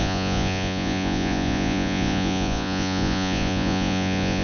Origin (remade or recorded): remade